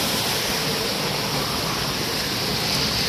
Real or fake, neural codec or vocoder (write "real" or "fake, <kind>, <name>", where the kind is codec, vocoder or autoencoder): real